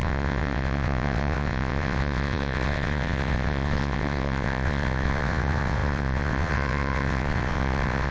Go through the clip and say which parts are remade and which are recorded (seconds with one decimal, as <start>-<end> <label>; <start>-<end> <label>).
0.0-8.1 remade